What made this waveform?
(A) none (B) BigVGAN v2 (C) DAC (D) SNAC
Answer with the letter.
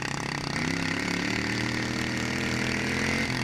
A